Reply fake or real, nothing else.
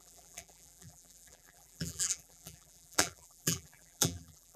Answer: fake